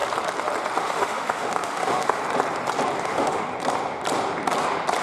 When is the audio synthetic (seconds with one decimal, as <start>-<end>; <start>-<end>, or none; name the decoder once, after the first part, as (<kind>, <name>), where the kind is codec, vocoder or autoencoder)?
0.8-2.2 (autoencoder, DAC-VAE); 3.0-3.5